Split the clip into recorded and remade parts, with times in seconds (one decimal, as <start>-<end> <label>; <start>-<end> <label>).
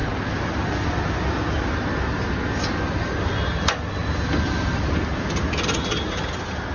0.0-6.7 recorded